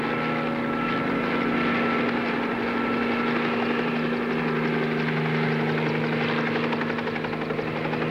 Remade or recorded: recorded